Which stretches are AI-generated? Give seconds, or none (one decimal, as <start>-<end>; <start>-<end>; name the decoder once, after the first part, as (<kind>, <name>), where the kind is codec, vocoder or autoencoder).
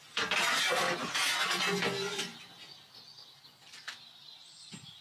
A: none